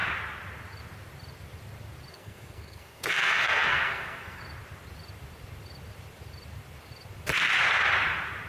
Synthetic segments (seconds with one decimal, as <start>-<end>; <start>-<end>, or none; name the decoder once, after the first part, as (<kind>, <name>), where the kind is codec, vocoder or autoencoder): 2.1-4.4 (codec, SNAC)